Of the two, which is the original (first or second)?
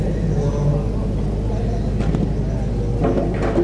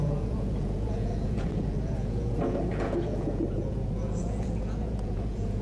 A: first